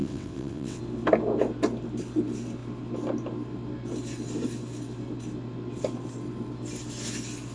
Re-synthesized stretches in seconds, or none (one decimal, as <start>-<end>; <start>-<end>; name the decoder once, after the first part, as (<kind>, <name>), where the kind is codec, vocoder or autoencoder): 0.0-0.8 (vocoder, WaveNeXt)

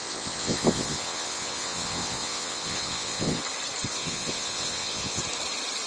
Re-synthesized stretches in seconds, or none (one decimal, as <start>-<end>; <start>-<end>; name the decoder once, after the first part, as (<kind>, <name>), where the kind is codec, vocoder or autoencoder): 0.0-3.4 (vocoder, WaveNeXt); 3.9-5.2